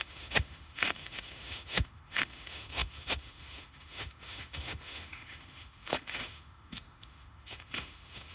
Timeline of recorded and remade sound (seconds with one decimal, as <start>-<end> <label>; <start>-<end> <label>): 0.0-8.3 remade